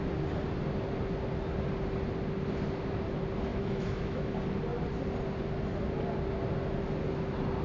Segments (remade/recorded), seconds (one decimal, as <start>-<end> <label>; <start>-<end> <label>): 0.0-3.5 recorded; 3.5-4.3 remade; 4.3-7.6 recorded

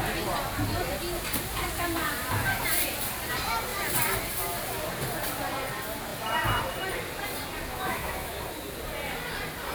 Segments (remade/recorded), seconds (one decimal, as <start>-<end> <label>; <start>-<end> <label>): 0.0-7.7 recorded; 7.7-8.4 remade; 8.4-9.7 recorded

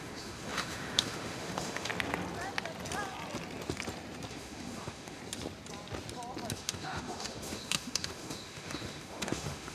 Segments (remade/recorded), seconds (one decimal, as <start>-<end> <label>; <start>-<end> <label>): 0.0-1.9 remade; 1.9-4.3 recorded; 4.3-5.2 remade; 5.2-6.5 recorded; 6.5-9.7 remade

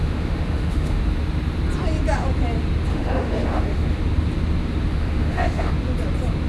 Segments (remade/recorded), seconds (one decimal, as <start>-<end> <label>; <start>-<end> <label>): 0.0-1.0 remade; 1.0-2.9 recorded; 2.9-4.0 remade; 4.0-4.9 recorded; 4.9-5.7 remade; 5.7-6.5 recorded

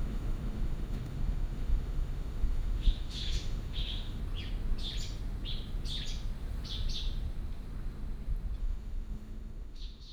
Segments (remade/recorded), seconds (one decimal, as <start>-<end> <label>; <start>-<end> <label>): 0.0-4.2 remade; 4.2-8.6 recorded; 8.6-10.1 remade